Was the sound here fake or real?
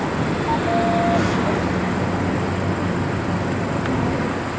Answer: real